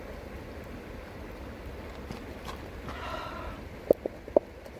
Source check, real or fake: real